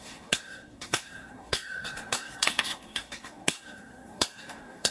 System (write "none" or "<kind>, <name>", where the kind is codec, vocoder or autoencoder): codec, SNAC